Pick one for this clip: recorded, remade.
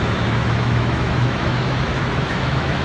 remade